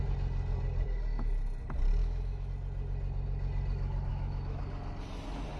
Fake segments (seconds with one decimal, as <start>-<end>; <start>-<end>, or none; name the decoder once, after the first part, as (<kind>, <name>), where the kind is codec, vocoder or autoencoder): 2.0-2.5 (autoencoder, DAC-VAE); 4.1-4.6